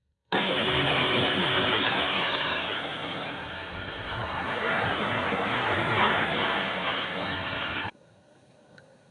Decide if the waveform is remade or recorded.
remade